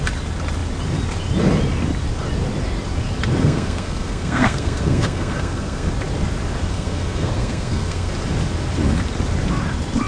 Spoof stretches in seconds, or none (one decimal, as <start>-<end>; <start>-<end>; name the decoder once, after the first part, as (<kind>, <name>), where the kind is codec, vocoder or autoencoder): 3.4-5.9 (codec, SNAC); 6.7-8.1